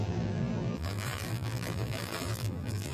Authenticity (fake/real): fake